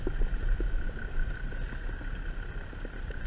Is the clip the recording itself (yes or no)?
yes